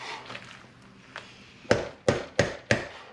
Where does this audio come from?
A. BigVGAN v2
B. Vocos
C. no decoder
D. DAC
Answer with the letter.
C